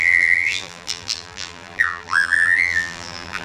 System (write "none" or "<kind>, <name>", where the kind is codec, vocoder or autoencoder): vocoder, BigVGAN v2